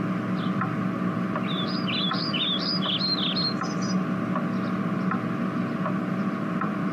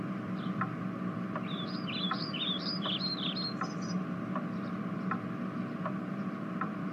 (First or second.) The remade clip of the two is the second